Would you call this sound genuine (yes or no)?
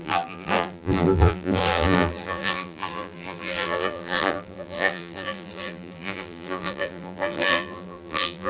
no